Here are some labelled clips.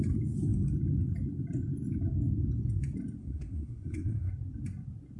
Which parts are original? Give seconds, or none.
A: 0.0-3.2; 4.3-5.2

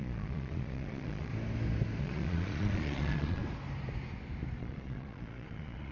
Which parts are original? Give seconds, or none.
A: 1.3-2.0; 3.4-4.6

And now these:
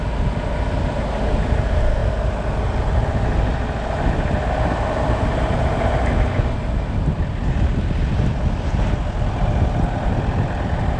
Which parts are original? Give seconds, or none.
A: 0.0-11.0

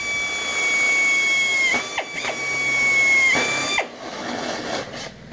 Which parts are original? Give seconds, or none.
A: 0.0-4.2; 4.8-5.3

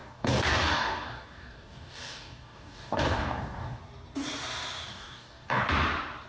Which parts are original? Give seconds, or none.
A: 3.8-4.9; 5.6-6.3

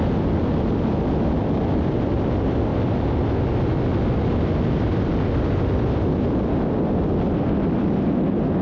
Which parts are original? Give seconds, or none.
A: 0.0-8.6

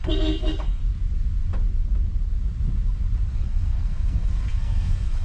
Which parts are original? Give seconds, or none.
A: 0.8-3.3